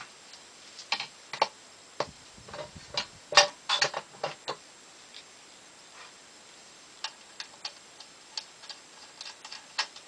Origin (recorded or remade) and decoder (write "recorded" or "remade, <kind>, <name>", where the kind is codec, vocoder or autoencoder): recorded